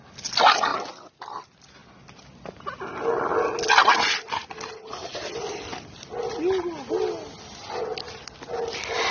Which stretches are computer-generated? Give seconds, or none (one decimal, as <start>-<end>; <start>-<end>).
none